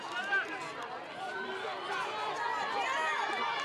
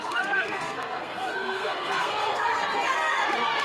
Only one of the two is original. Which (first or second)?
first